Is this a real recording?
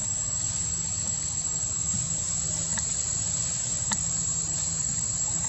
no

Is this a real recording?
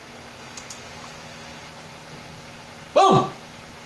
yes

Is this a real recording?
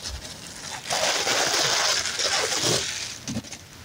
yes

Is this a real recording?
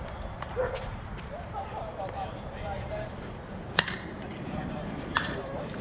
no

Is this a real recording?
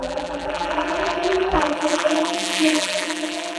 no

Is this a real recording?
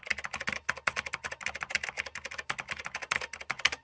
yes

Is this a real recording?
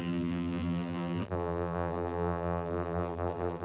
no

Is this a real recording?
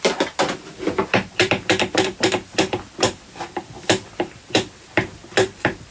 no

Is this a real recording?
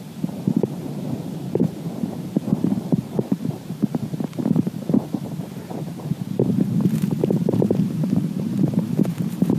no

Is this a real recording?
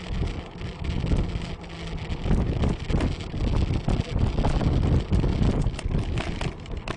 yes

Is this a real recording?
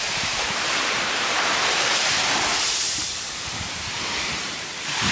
no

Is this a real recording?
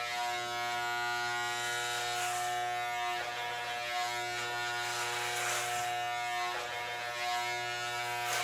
yes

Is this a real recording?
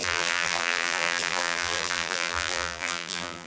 no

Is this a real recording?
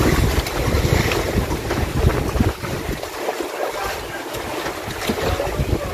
yes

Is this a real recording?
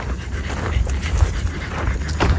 no